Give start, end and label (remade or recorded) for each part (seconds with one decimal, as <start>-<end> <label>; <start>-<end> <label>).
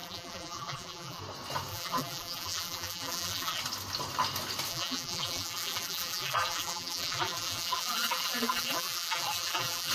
0.0-1.2 remade; 1.2-1.7 recorded; 1.7-3.6 remade; 3.6-4.7 recorded; 4.7-9.9 remade